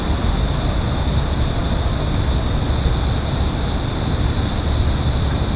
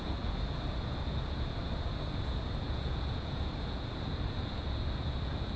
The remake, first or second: second